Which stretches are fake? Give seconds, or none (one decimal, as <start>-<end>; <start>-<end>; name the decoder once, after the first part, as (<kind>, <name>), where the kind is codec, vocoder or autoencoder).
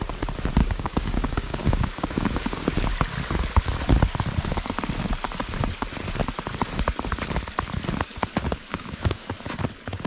0.6-2.9 (codec, DAC); 8.7-9.3